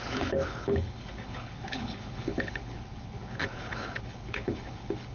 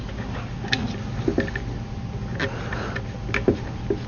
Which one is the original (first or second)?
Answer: second